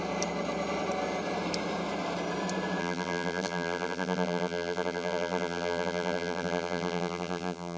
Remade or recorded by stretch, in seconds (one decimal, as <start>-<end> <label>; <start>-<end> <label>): 0.0-2.8 recorded; 2.8-7.8 remade